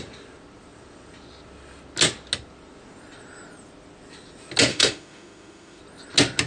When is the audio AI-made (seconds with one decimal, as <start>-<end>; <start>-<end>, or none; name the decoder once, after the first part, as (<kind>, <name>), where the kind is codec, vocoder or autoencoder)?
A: 4.7-5.8 (autoencoder, DAC-VAE)